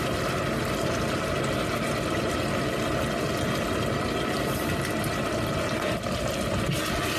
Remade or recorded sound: recorded